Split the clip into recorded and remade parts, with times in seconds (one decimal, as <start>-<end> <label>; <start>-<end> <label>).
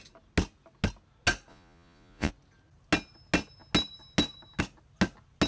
0.0-1.5 recorded; 1.5-2.3 remade; 2.3-5.5 recorded